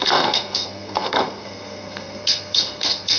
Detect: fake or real fake